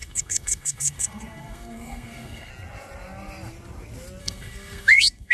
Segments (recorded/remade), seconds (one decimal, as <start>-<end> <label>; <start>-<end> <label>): 0.0-2.5 remade; 2.5-4.2 recorded; 4.2-5.3 remade